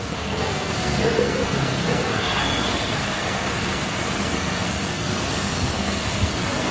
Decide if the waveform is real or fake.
fake